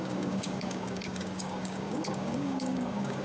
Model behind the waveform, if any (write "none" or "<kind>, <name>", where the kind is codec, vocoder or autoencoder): codec, DAC